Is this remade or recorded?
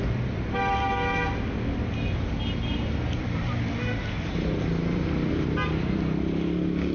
recorded